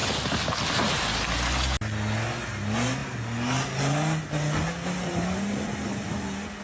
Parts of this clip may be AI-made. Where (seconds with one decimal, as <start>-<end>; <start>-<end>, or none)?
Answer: none